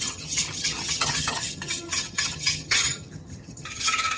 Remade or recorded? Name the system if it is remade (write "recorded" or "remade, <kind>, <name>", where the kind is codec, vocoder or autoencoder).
remade, vocoder, HiFi-GAN